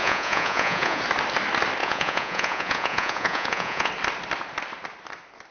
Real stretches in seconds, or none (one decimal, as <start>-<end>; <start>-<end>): 1.0-1.8; 3.9-5.5